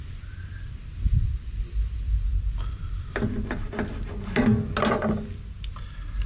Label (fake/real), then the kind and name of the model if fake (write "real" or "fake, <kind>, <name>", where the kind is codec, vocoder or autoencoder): real